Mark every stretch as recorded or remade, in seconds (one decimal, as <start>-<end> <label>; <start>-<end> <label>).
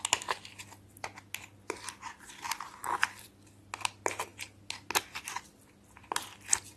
0.0-2.8 recorded; 2.8-3.4 remade; 3.4-6.8 recorded